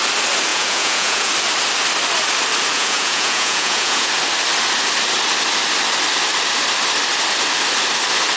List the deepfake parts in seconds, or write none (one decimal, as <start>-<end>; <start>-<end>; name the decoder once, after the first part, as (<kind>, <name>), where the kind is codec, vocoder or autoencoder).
0.5-1.3 (vocoder, Vocos); 2.7-4.1